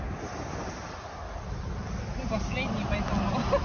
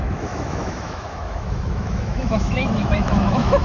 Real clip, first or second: first